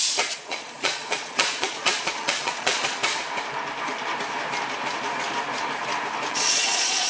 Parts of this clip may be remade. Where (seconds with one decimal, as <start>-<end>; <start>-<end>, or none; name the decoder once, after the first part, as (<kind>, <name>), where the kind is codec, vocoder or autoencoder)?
0.0-3.0 (vocoder, Vocos); 6.3-7.1